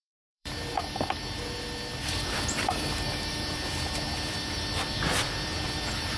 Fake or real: fake